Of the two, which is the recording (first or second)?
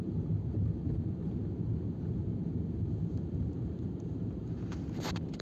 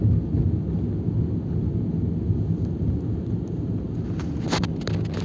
second